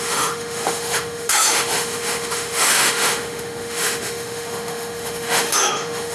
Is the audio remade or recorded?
remade